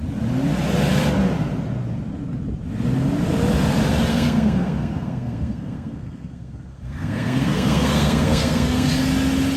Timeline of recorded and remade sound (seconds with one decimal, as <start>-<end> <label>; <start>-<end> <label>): 0.0-4.1 recorded; 4.1-8.9 remade; 8.9-9.6 recorded